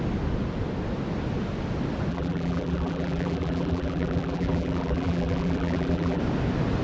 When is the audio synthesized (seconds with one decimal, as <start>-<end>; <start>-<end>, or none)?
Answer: 2.1-6.2